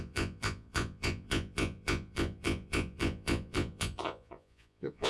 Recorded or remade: remade